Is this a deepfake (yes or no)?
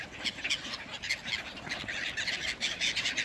no